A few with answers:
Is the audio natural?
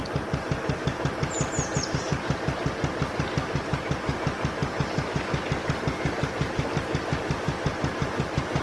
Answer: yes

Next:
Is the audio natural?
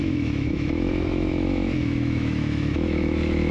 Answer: no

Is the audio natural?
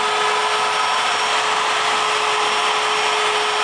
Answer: yes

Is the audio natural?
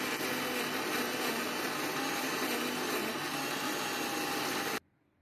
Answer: yes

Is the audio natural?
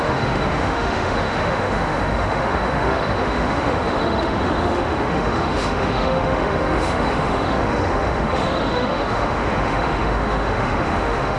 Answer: no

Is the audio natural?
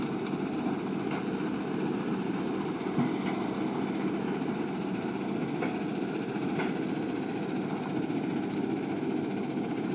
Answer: yes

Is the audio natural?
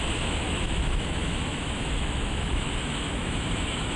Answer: no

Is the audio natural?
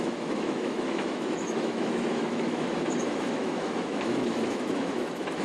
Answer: no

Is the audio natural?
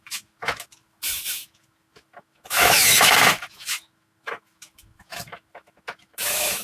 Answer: no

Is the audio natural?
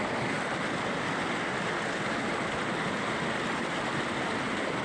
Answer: yes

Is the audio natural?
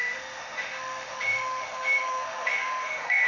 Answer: no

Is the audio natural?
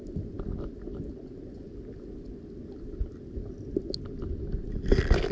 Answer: yes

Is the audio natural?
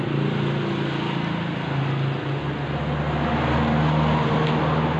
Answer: yes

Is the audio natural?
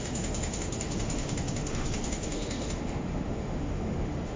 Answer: no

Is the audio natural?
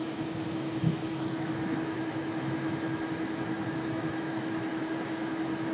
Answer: no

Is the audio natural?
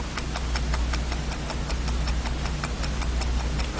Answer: yes